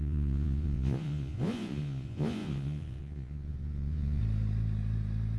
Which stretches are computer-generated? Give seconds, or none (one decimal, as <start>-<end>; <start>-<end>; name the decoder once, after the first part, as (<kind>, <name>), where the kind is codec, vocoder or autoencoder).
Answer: 0.0-4.2 (vocoder, Vocos)

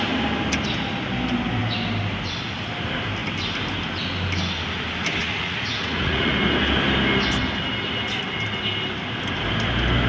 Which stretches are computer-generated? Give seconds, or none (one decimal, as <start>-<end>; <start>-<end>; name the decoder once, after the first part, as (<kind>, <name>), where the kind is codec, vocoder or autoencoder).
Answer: 5.2-6.3 (vocoder, Vocos)

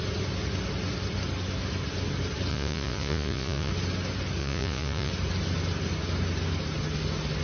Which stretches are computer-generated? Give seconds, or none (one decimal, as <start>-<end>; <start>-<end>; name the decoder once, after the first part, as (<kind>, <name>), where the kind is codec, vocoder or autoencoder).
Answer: 2.5-3.7 (vocoder, Vocos); 4.4-5.1

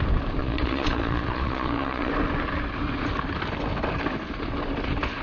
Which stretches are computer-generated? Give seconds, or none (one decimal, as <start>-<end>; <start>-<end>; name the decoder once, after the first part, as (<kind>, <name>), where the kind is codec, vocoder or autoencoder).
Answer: 0.4-2.1 (vocoder, Vocos)

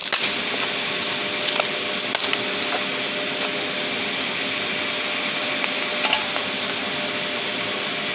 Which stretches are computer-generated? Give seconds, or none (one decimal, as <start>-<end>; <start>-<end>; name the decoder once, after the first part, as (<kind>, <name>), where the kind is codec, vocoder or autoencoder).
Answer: none

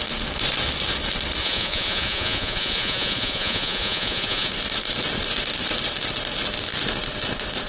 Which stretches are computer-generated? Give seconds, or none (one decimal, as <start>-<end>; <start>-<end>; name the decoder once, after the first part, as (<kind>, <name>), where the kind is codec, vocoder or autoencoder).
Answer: 1.4-4.5 (vocoder, Vocos)